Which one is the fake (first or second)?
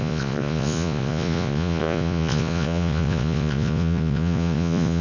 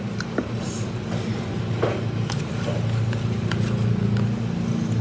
first